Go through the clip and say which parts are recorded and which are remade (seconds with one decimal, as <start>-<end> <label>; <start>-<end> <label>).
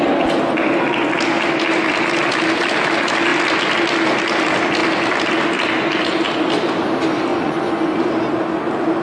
0.0-7.3 recorded; 7.3-7.9 remade; 7.9-9.0 recorded